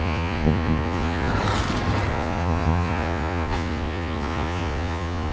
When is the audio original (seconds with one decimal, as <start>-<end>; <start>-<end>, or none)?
1.3-2.1